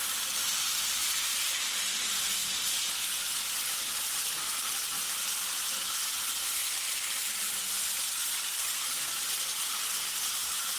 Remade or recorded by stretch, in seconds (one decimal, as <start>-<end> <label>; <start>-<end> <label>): 0.0-8.5 recorded; 8.5-9.1 remade; 9.1-10.8 recorded